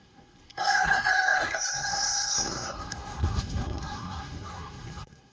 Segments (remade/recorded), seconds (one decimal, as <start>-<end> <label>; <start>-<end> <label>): 0.0-5.3 remade